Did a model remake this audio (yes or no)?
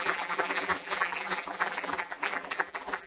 yes